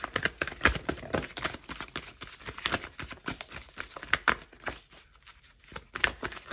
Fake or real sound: real